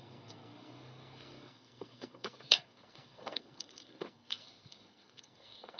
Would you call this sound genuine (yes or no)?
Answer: no